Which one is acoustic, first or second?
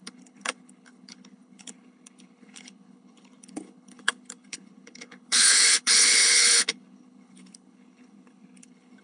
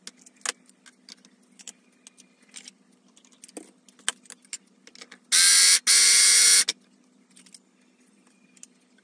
second